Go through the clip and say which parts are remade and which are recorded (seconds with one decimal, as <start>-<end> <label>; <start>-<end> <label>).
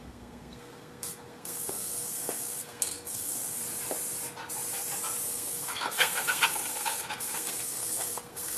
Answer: 0.0-3.6 remade; 3.6-5.3 recorded; 5.3-8.6 remade